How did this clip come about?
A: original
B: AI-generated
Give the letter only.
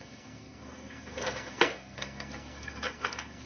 B